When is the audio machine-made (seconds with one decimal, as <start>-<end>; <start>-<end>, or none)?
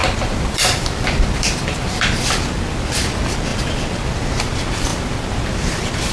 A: 0.0-2.3; 4.9-6.1